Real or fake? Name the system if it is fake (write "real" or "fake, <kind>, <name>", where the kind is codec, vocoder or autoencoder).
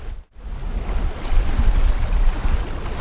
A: real